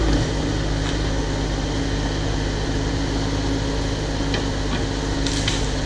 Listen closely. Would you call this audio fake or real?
real